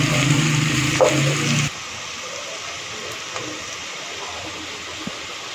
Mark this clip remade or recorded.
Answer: recorded